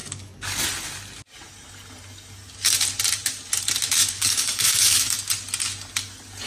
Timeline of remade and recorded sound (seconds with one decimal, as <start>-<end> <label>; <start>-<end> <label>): 0.0-0.6 remade; 0.6-4.0 recorded; 4.0-5.3 remade; 5.3-6.5 recorded